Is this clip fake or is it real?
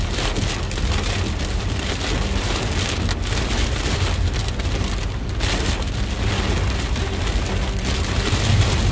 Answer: real